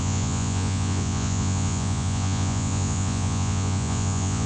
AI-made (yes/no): yes